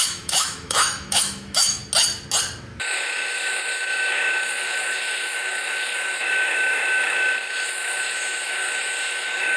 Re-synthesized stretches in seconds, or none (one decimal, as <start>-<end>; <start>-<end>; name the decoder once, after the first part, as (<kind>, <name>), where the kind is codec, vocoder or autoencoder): 0.0-1.8 (autoencoder, DAC-VAE); 2.8-9.6